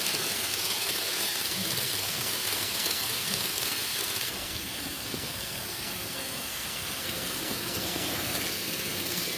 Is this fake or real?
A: fake